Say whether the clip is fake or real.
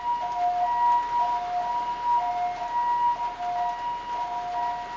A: real